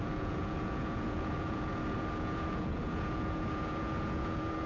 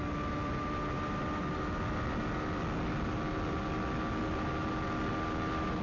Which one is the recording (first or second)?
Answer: second